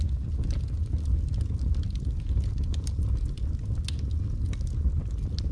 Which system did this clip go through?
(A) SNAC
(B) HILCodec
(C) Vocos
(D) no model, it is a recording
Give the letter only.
D